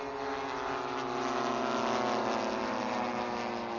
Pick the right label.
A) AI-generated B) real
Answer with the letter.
B